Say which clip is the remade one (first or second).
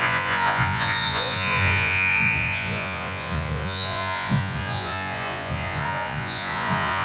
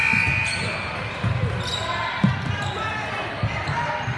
first